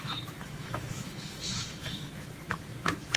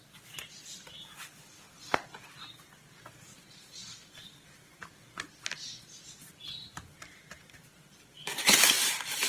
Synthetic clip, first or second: first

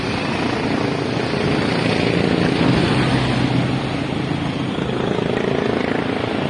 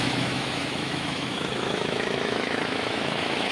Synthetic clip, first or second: second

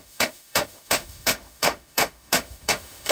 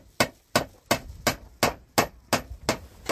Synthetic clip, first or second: first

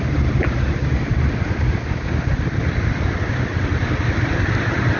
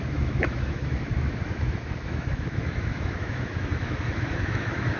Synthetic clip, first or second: second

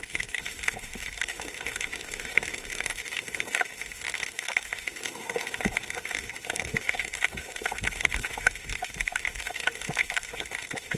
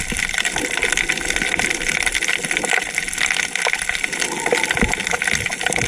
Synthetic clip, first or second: first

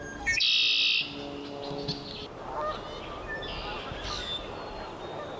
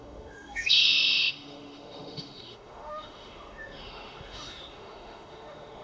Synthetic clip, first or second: second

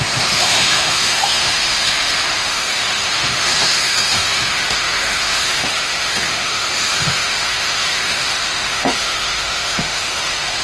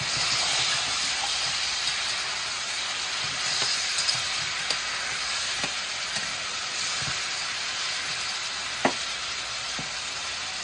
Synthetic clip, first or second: first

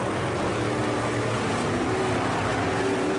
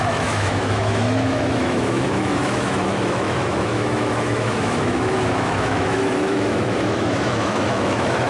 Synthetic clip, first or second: second